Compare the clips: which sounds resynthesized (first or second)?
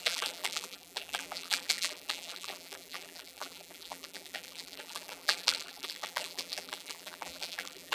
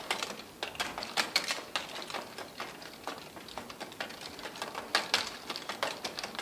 first